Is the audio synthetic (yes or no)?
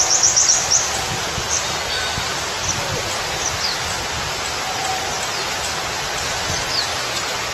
yes